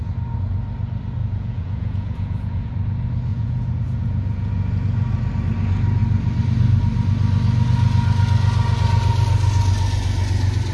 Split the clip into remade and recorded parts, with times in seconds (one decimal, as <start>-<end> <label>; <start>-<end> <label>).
0.0-1.2 recorded; 1.2-2.7 remade; 2.7-3.3 recorded; 3.3-4.5 remade; 4.5-10.7 recorded